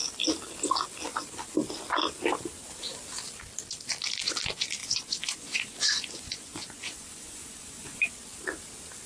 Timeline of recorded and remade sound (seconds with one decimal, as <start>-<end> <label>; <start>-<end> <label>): 0.0-4.8 recorded; 4.8-8.1 remade; 8.1-9.1 recorded